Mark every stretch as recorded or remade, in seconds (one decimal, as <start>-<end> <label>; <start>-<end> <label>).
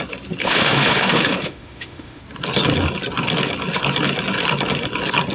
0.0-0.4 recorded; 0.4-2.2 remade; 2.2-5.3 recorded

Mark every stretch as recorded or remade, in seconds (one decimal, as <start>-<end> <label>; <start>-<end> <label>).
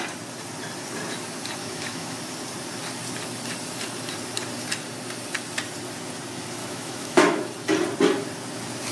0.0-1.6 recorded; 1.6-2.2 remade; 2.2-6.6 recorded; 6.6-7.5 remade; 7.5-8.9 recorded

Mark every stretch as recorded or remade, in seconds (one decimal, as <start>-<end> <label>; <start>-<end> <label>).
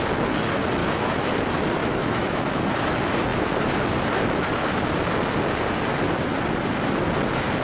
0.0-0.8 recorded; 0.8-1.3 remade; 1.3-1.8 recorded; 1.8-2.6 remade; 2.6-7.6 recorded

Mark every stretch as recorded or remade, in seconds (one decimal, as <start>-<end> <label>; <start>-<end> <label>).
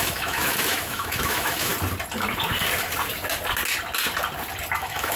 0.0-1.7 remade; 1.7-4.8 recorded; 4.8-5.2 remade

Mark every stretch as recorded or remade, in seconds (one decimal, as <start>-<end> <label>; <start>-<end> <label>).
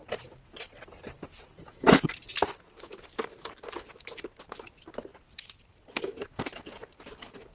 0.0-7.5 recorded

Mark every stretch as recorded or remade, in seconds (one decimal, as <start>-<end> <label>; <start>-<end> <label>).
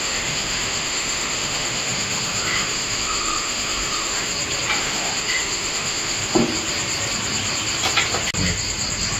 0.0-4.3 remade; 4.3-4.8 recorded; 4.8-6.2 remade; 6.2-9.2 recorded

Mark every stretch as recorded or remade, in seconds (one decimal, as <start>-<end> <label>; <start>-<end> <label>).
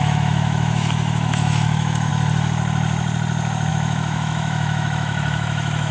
0.0-2.1 remade; 2.1-3.7 recorded; 3.7-5.9 remade